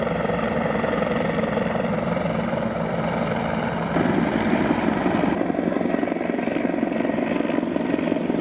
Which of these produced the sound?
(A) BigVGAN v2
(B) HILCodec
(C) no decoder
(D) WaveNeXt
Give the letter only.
A